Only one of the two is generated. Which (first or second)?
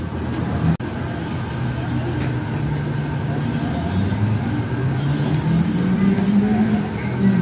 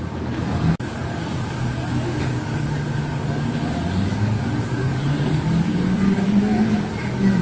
second